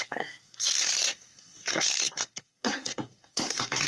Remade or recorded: remade